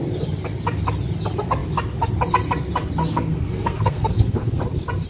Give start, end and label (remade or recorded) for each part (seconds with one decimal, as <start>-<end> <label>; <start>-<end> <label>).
0.0-3.0 recorded; 3.0-4.6 remade; 4.6-5.1 recorded